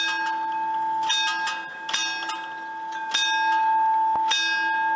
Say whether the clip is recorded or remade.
recorded